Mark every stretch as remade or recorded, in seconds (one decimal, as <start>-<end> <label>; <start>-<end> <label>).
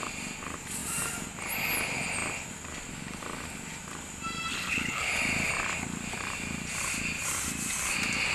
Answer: 0.0-4.5 recorded; 4.5-5.1 remade; 5.1-8.3 recorded